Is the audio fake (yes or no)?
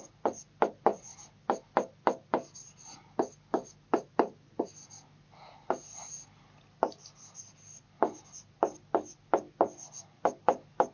no